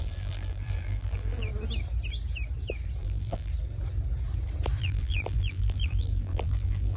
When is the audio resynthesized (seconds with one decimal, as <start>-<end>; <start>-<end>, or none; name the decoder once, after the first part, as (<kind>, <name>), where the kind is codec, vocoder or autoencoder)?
0.0-1.5 (vocoder, BigVGAN v2); 3.0-3.5; 4.8-7.0